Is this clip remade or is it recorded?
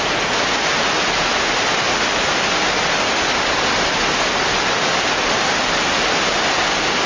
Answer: recorded